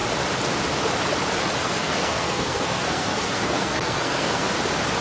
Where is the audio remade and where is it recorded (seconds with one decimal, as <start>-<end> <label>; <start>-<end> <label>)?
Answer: 0.0-1.6 recorded; 1.6-4.6 remade; 4.6-5.0 recorded